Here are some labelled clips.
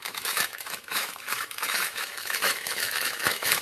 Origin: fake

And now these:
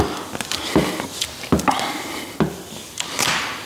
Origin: real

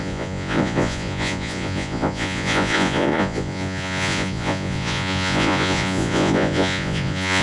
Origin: fake